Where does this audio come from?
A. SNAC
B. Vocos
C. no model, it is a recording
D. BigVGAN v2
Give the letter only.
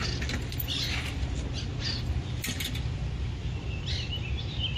C